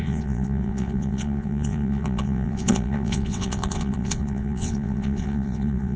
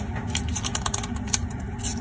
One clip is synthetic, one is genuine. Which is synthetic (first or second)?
first